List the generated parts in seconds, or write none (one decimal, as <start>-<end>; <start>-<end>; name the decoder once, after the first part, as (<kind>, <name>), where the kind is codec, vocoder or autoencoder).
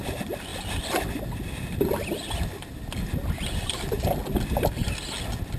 0.0-4.2 (vocoder, BigVGAN v2)